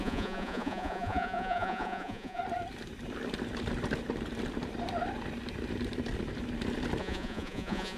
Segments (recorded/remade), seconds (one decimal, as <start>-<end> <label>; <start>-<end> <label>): 0.0-2.4 remade; 2.4-7.0 recorded; 7.0-8.0 remade